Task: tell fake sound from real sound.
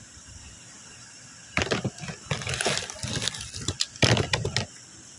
fake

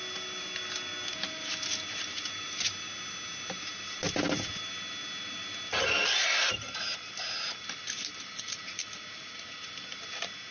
real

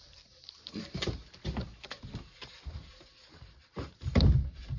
real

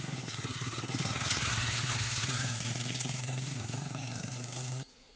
fake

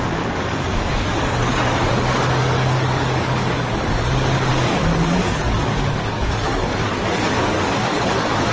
fake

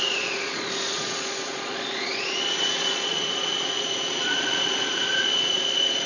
fake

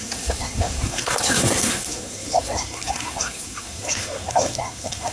fake